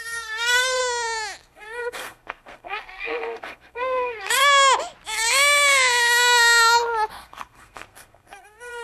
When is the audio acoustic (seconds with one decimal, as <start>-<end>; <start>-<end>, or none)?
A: 0.8-1.4; 4.4-7.1